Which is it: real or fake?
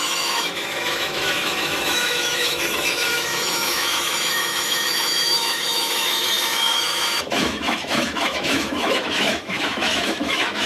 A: fake